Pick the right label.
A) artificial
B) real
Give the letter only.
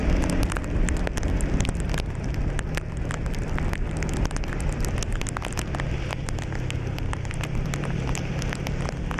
B